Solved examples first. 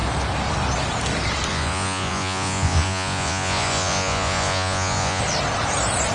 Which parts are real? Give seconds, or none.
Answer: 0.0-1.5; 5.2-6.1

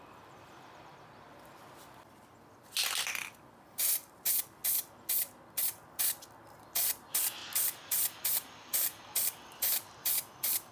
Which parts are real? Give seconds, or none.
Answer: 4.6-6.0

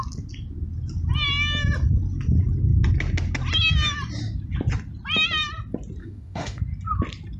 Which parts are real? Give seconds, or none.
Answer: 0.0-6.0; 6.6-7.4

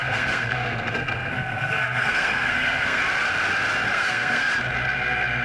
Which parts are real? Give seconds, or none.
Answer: 3.0-3.9; 4.5-5.4

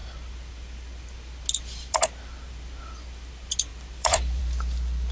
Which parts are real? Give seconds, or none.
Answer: 0.0-3.7; 4.4-5.1

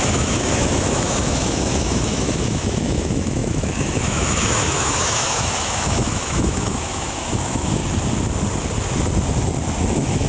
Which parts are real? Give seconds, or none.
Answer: 7.8-9.9